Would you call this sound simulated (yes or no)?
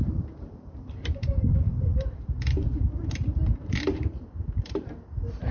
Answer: yes